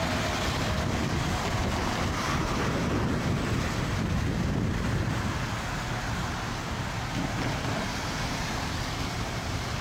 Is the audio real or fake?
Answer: real